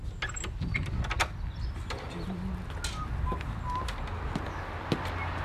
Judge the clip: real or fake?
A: real